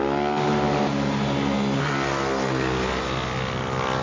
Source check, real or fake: real